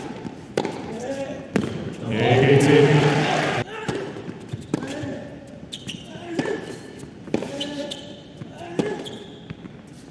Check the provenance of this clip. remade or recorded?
remade